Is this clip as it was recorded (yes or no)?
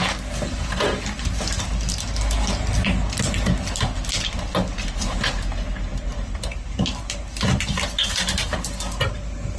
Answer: yes